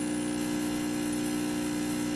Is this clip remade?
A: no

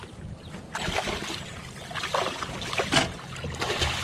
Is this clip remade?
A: no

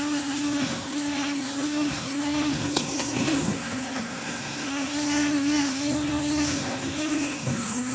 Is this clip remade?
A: yes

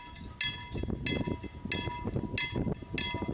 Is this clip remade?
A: no